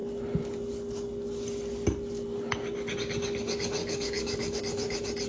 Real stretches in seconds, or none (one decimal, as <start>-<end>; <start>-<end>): 0.0-3.8; 4.6-5.3

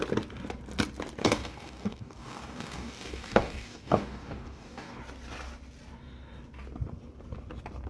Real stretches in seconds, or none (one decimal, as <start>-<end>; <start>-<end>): 0.0-1.2; 5.0-7.9

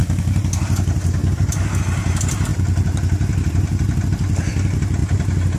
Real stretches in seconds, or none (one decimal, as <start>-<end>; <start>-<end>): 0.0-1.2; 1.8-5.6

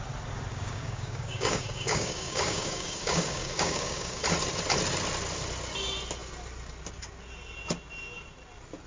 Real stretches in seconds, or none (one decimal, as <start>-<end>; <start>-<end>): 0.0-0.5; 4.2-8.9

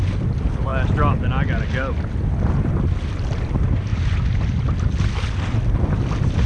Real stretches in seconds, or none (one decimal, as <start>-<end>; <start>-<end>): 0.0-6.5